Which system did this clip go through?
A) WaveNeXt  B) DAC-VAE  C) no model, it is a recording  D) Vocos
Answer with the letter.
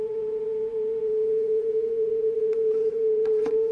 D